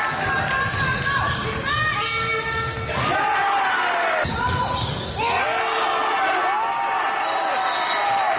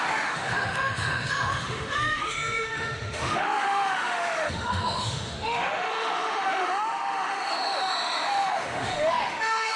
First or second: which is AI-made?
second